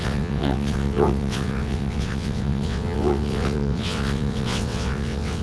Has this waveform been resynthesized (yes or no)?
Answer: yes